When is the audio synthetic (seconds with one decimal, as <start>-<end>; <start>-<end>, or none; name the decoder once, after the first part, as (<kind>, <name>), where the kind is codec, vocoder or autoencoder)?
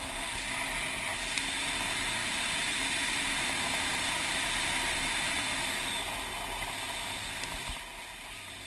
none